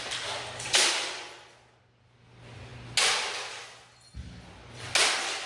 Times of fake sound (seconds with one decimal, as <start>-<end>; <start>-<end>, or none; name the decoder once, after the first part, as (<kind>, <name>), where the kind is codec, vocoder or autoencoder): none